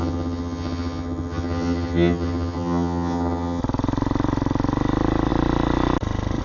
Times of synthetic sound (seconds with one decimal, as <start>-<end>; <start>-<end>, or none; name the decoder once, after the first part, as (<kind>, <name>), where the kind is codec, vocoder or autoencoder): 0.0-3.6 (vocoder, HiFi-GAN)